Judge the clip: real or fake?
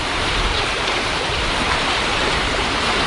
fake